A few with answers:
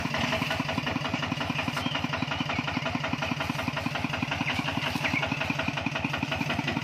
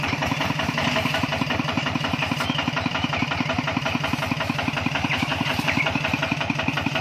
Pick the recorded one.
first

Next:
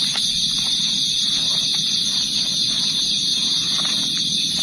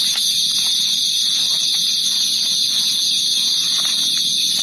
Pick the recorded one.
second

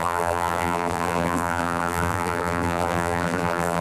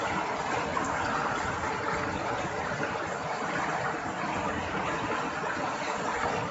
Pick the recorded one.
second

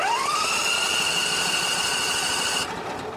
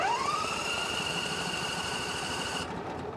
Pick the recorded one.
first